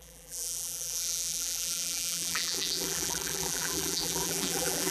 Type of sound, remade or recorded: remade